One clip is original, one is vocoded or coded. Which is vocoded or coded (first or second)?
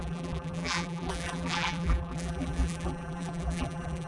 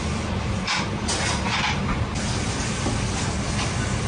first